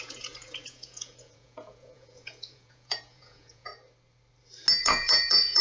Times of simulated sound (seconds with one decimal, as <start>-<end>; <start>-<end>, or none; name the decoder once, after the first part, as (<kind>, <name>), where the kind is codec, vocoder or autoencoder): 0.0-3.7 (vocoder, Vocos); 4.8-5.6